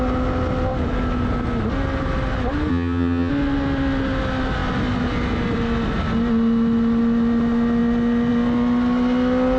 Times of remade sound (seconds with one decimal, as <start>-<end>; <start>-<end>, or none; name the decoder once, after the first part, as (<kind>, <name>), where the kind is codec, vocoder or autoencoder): 2.7-3.3 (vocoder, HiFi-GAN)